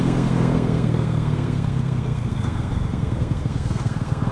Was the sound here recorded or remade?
remade